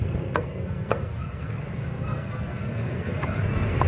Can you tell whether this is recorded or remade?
remade